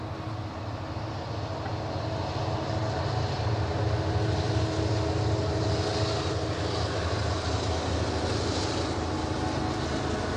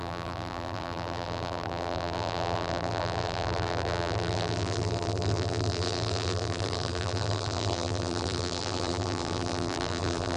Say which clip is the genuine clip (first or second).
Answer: first